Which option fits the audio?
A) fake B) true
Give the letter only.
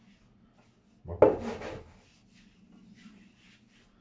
B